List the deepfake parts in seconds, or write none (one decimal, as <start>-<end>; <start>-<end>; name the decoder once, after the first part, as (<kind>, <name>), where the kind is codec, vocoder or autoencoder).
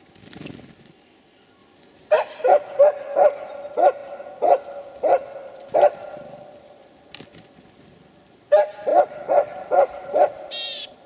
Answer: 1.6-2.8 (vocoder, BigVGAN v2); 8.9-10.5